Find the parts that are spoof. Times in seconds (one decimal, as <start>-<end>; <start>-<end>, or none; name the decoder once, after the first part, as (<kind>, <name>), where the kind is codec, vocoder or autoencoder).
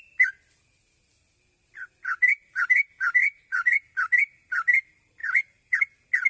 3.2-3.8 (vocoder, BigVGAN v2); 5.2-5.8